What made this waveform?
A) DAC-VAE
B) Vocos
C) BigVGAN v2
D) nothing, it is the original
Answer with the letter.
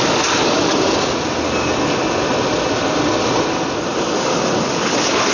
D